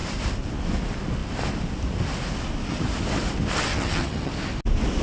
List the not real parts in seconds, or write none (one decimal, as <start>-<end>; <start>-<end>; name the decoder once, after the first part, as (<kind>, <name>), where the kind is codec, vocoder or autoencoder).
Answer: 3.7-4.3 (vocoder, HiFi-GAN)